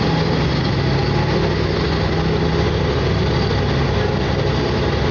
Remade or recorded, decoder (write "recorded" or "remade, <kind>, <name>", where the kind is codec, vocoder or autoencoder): recorded